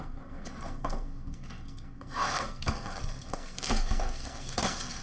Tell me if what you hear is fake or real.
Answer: fake